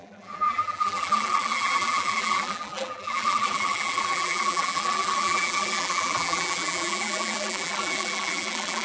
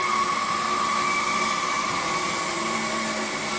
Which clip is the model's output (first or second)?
first